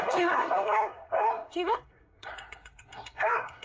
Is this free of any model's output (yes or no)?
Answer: no